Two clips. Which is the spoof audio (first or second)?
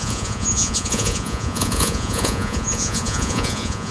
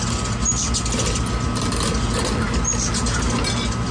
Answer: first